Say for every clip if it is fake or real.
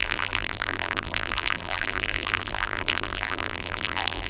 fake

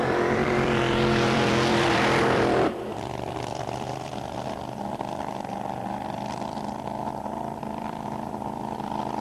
fake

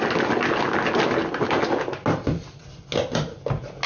real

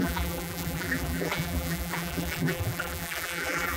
fake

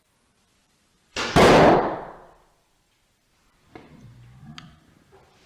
fake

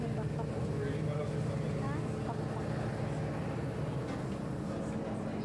real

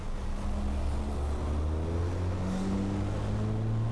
real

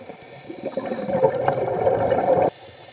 fake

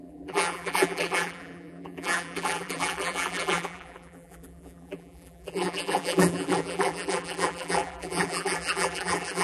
fake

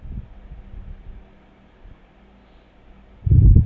real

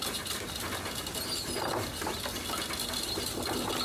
real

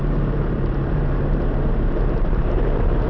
fake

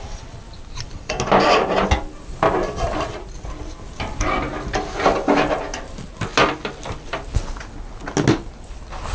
real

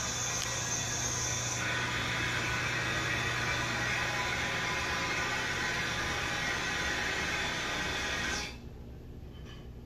real